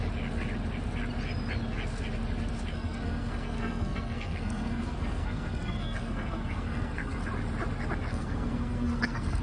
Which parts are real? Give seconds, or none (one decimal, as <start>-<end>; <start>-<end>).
0.0-2.7; 7.2-8.1